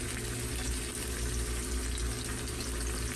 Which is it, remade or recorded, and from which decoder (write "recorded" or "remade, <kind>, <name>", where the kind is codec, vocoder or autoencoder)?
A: recorded